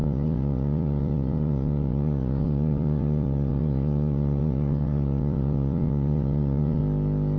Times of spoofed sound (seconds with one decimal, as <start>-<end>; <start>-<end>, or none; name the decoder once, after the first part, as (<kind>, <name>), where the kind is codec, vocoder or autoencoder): 0.0-6.8 (vocoder, Vocos)